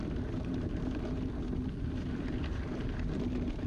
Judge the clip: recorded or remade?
recorded